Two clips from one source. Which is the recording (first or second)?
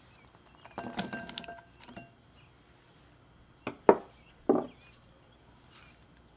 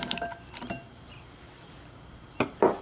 first